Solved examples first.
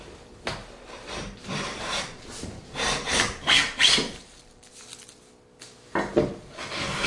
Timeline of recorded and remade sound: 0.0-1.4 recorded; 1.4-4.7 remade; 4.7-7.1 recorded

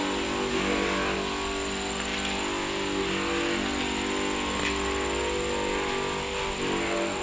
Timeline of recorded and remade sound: 0.0-7.2 recorded

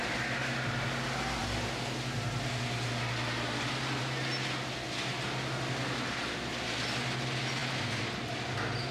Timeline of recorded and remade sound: 0.0-8.9 recorded